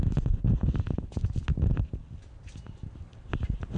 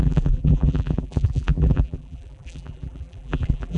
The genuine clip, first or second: first